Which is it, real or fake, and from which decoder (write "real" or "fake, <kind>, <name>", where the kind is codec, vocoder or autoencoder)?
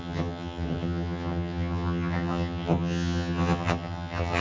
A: fake, vocoder, HiFi-GAN